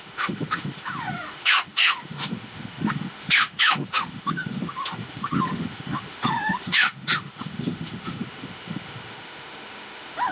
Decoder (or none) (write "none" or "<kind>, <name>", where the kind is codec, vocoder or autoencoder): autoencoder, DAC-VAE